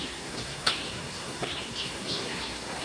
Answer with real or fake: fake